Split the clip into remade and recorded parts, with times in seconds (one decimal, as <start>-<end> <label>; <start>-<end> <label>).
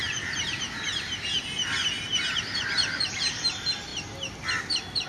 0.0-1.1 remade; 1.1-5.1 recorded